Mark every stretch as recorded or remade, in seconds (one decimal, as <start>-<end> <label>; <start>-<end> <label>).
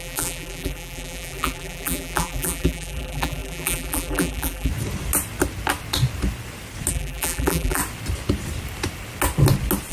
0.0-4.7 remade; 4.7-6.9 recorded; 6.9-7.8 remade; 7.8-9.9 recorded